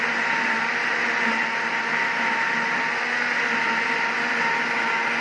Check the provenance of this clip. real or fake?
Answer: real